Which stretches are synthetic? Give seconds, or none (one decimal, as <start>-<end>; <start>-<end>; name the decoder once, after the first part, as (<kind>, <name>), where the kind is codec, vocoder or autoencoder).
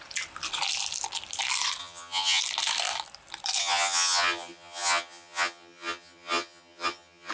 1.8-2.4 (vocoder, HiFi-GAN); 3.6-7.3